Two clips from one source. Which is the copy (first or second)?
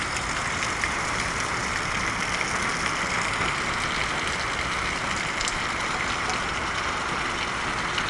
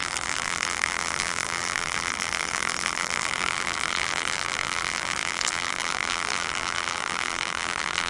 second